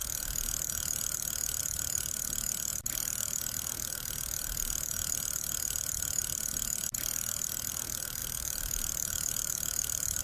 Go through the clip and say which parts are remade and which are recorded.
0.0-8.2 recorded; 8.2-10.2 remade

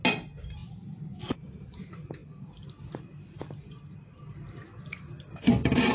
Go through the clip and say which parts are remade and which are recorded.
0.0-0.6 recorded; 0.6-1.5 remade; 1.5-2.2 recorded; 2.2-5.9 remade

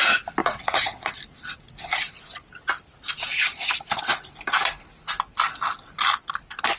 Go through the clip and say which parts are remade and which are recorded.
0.0-0.4 recorded; 0.4-1.1 remade; 1.1-6.8 recorded

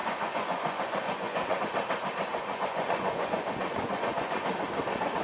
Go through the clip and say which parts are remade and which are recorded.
0.0-1.6 remade; 1.6-2.3 recorded; 2.3-4.5 remade; 4.5-5.2 recorded

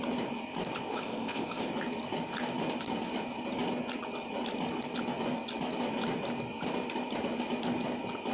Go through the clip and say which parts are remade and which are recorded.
0.0-0.9 recorded; 0.9-1.7 remade; 1.7-8.3 recorded

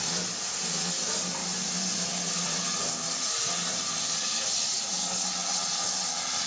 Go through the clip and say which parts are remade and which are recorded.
0.0-1.4 recorded; 1.4-2.1 remade; 2.1-6.5 recorded

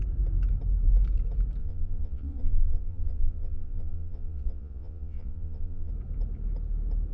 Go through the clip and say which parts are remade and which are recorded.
0.0-1.6 recorded; 1.6-5.9 remade; 5.9-7.1 recorded

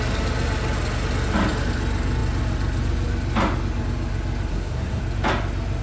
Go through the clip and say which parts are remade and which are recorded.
0.0-4.5 recorded; 4.5-5.0 remade; 5.0-5.8 recorded